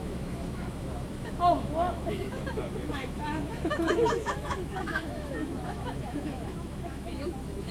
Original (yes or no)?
no